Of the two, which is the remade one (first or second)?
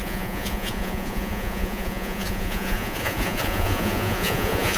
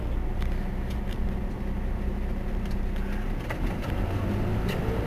first